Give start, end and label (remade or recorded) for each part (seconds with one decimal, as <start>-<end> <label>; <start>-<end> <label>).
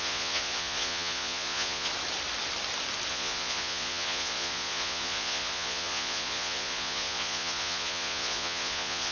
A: 0.0-1.9 remade; 1.9-3.1 recorded; 3.1-9.1 remade